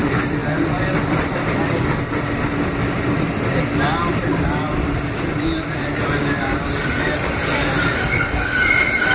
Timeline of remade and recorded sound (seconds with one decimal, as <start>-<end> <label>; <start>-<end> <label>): 0.0-0.4 recorded; 0.4-3.1 remade; 3.1-4.0 recorded; 4.0-7.4 remade; 7.4-9.1 recorded